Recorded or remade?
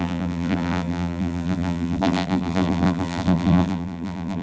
remade